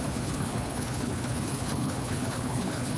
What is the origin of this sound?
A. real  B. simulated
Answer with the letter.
B